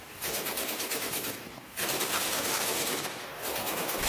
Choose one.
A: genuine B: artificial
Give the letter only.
B